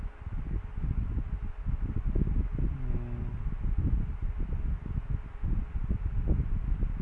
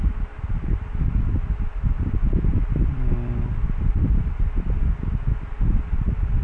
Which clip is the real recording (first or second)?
first